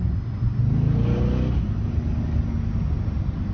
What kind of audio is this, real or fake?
real